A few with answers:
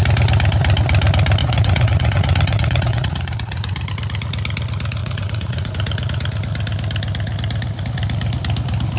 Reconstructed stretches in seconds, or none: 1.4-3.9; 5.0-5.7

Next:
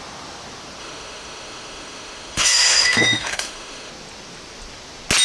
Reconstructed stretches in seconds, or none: 0.8-3.9

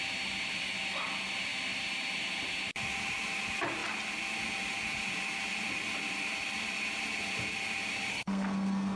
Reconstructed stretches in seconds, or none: 8.1-9.0